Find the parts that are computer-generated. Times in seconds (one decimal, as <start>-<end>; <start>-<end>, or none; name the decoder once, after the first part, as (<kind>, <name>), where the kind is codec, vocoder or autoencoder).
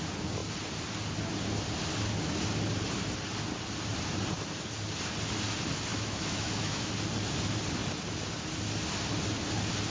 5.9-6.9 (autoencoder, DAC-VAE)